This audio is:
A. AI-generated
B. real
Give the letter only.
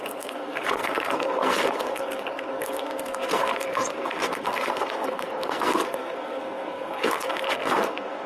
A